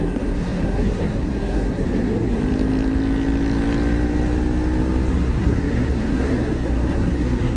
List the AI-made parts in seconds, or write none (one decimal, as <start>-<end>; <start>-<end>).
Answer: 0.0-2.4; 5.1-7.6